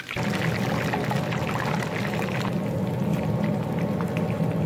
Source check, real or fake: real